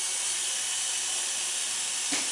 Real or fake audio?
real